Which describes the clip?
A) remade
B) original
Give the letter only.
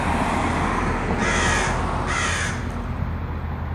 B